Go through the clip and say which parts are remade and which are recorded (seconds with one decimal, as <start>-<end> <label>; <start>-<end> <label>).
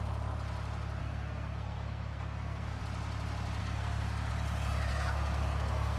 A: 0.0-1.0 recorded; 1.0-2.8 remade; 2.8-3.6 recorded; 3.6-4.3 remade; 4.3-4.9 recorded; 4.9-6.0 remade